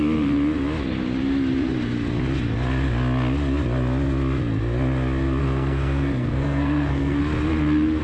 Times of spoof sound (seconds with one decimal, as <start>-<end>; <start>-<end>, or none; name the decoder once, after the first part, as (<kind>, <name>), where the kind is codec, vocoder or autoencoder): 5.4-7.2 (codec, SNAC)